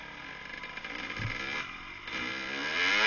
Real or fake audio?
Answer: real